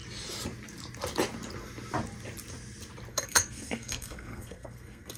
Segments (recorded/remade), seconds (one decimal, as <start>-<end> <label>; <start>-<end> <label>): 0.0-3.1 recorded; 3.1-5.2 remade